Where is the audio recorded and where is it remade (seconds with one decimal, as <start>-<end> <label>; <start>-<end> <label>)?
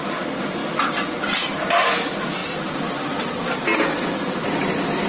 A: 0.0-5.1 recorded